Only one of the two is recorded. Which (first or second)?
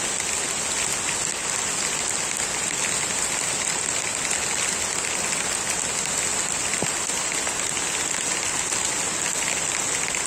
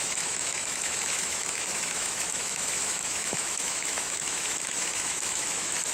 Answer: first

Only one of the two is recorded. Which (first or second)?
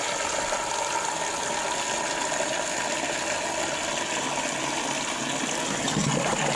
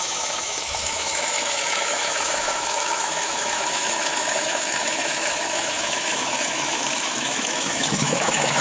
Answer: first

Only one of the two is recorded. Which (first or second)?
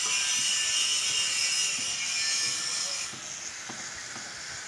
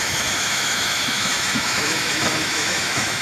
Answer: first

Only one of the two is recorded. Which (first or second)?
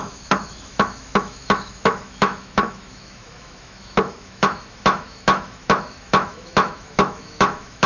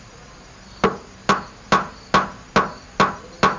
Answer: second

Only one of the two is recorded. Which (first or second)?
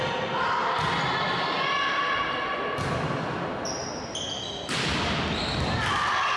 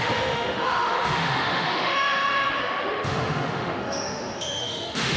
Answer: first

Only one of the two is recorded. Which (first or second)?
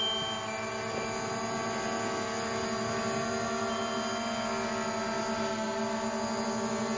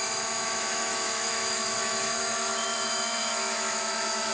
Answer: first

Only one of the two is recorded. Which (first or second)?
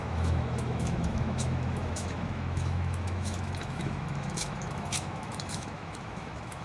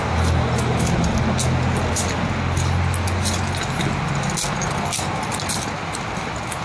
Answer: second